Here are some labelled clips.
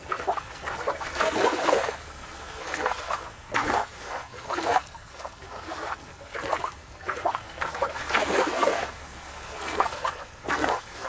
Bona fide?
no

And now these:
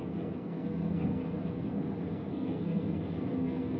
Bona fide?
no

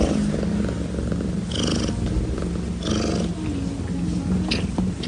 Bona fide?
yes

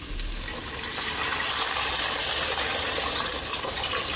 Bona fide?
yes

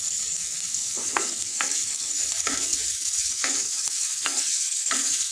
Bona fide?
no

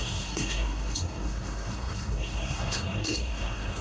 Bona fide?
no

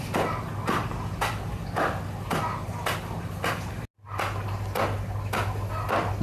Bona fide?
yes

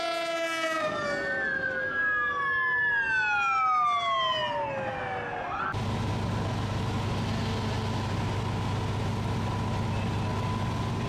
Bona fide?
yes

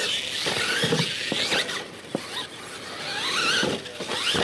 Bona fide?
yes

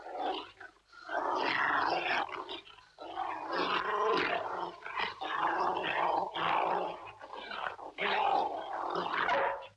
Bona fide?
yes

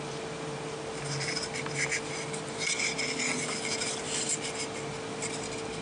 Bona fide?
yes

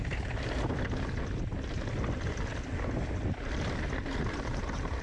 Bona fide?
yes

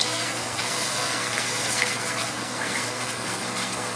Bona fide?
no